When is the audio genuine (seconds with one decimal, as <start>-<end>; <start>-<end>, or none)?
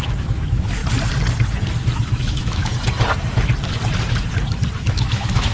0.8-2.2; 2.7-4.8